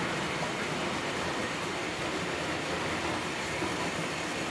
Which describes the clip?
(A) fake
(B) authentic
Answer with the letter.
B